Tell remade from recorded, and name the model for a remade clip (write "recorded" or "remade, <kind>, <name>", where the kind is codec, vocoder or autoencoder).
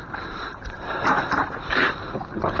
remade, vocoder, BigVGAN v2